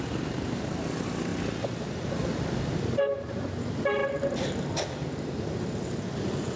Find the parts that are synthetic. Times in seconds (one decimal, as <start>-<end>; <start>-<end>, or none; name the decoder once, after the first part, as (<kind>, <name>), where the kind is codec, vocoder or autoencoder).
none